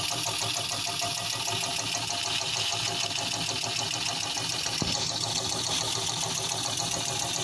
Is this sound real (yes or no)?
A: yes